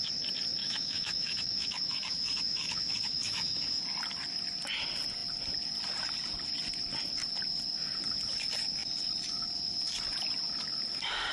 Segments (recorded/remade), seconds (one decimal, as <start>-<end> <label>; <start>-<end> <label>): 0.0-0.6 recorded; 0.6-3.8 remade; 3.8-11.3 recorded